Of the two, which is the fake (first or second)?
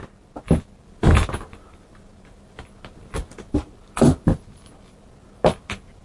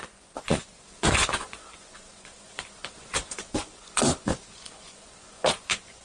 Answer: second